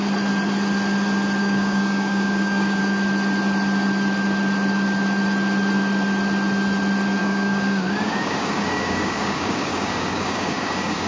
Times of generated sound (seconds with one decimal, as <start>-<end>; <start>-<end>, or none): 1.4-2.8; 7.2-11.1